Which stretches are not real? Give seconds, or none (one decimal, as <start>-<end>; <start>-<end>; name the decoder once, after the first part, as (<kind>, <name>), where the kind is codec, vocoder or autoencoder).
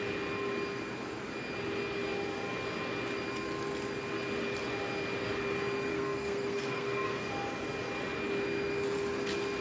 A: 5.9-7.3 (codec, SNAC)